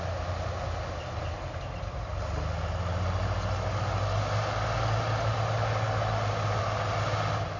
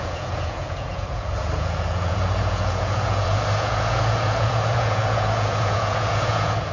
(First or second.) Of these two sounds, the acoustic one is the first